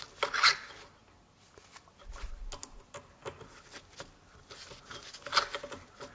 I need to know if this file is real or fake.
real